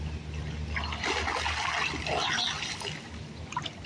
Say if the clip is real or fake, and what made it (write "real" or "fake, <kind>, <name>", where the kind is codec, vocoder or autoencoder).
real